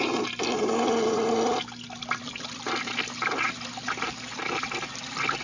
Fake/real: real